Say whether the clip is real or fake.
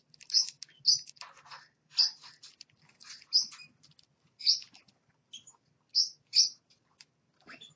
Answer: real